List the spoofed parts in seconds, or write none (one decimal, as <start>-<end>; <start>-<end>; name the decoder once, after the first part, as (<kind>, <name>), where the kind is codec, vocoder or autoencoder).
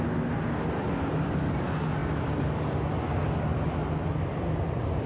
none